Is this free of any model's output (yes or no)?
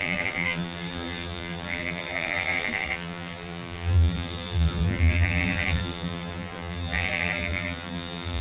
no